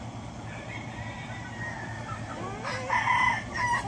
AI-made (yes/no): no